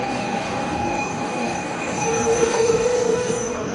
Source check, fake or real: fake